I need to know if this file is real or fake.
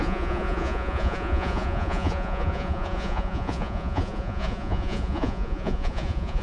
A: fake